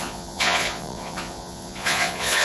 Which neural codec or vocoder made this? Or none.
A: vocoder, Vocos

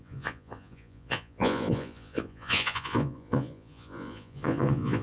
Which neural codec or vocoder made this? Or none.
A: vocoder, Vocos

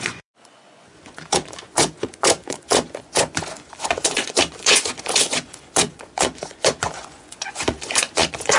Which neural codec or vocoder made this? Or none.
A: vocoder, Vocos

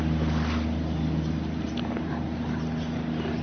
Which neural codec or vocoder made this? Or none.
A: none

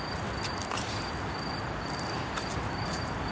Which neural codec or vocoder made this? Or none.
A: none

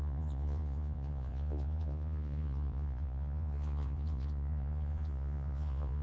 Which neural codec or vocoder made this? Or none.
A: vocoder, Vocos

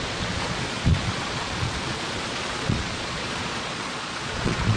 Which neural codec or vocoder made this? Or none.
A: vocoder, Vocos